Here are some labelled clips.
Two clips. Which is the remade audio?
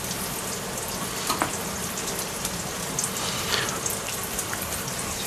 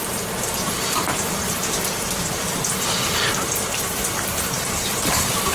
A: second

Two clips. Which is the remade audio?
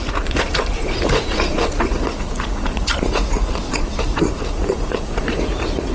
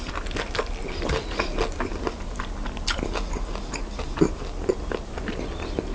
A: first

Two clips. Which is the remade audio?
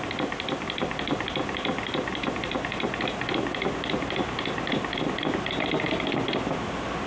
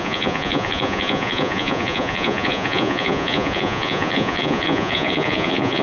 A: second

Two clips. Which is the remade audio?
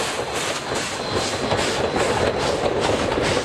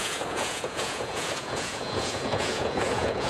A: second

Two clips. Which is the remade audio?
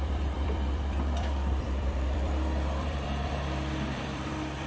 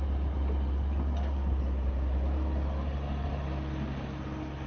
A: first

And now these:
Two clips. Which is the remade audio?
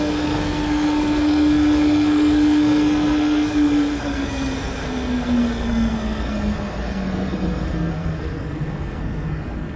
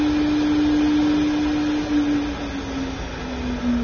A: first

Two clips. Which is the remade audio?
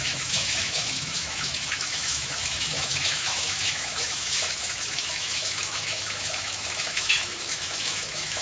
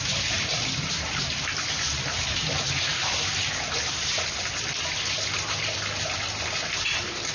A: first